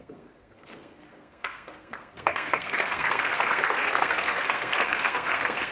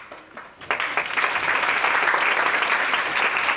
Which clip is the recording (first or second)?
second